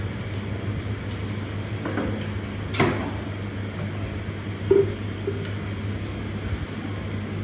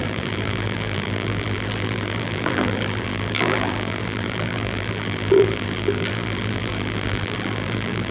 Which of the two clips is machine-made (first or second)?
second